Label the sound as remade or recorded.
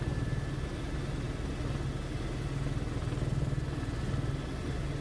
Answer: recorded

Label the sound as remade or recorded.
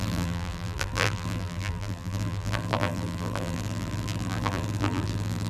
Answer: remade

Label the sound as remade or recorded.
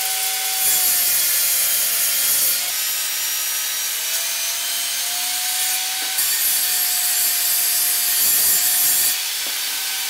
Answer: recorded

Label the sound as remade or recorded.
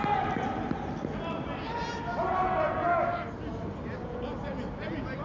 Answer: recorded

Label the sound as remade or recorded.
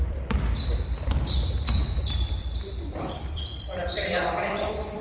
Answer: remade